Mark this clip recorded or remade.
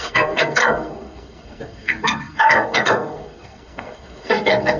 remade